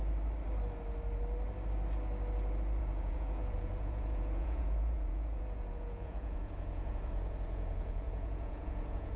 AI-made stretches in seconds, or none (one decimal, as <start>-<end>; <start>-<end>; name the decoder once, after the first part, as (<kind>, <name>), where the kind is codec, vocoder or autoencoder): 2.8-9.2 (vocoder, Vocos)